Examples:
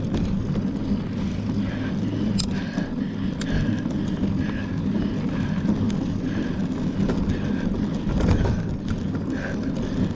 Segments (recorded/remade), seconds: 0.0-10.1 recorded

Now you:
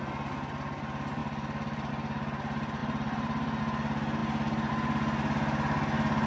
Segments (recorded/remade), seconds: 0.0-1.2 recorded; 1.2-1.9 remade; 1.9-2.8 recorded; 2.8-3.6 remade; 3.6-6.3 recorded

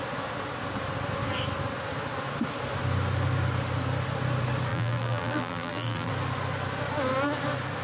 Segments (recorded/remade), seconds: 0.0-4.7 recorded; 4.7-6.1 remade; 6.1-7.8 recorded

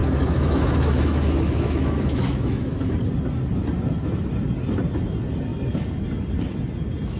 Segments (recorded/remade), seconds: 0.0-2.9 remade; 2.9-7.2 recorded

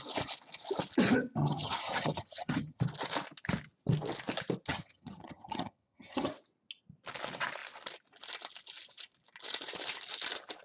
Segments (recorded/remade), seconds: 0.0-1.4 recorded; 1.4-2.8 remade; 2.8-4.7 recorded; 4.7-6.3 remade; 6.3-10.6 recorded

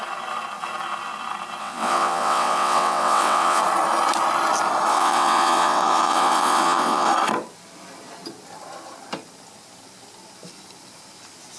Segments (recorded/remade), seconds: 0.0-1.6 recorded; 1.6-3.6 remade; 3.6-4.9 recorded; 4.9-7.1 remade; 7.1-11.6 recorded

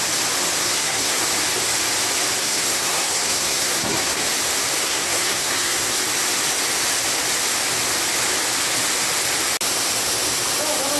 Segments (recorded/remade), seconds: 0.0-0.6 recorded; 0.6-1.2 remade; 1.2-2.4 recorded; 2.4-4.2 remade; 4.2-4.8 recorded; 4.8-6.0 remade; 6.0-11.0 recorded